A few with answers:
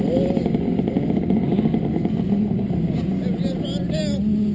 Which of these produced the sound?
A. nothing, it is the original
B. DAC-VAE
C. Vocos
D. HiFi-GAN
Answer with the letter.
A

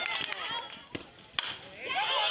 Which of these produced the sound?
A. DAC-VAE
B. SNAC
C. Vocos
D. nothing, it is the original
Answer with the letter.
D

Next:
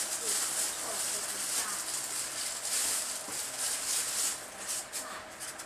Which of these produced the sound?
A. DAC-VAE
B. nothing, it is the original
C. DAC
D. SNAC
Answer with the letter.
B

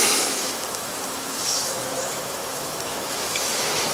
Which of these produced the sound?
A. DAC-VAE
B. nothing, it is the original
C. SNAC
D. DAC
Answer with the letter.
A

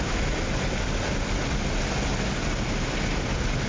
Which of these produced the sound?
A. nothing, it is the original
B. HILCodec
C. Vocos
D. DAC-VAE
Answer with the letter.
A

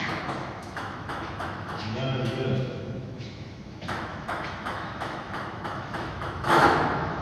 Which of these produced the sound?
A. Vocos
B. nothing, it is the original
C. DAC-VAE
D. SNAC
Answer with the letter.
C